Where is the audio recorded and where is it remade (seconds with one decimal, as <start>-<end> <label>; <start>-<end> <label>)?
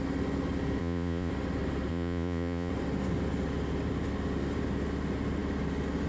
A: 0.0-0.8 recorded; 0.8-1.3 remade; 1.3-1.9 recorded; 1.9-2.7 remade; 2.7-6.1 recorded